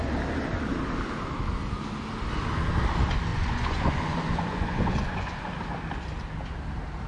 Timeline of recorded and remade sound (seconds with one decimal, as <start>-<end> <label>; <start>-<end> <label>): 0.0-3.3 recorded; 3.3-5.5 remade; 5.5-7.1 recorded